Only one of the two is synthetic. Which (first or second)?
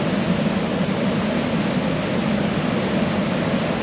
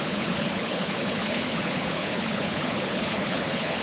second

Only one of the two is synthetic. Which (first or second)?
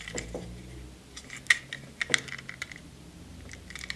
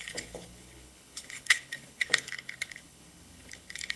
second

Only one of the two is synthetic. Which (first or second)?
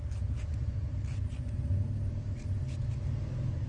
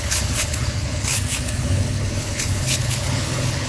second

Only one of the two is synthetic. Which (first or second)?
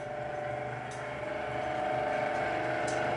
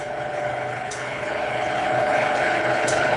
second